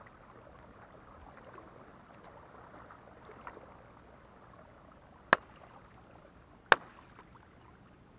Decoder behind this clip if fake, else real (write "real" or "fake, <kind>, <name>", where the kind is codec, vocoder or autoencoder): real